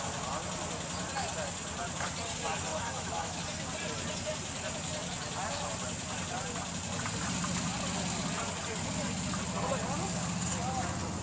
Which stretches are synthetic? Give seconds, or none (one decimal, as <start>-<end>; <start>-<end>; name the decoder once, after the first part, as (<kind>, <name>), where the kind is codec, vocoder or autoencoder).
2.7-3.4 (autoencoder, DAC-VAE)